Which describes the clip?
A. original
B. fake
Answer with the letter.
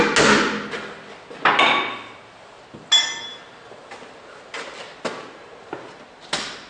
A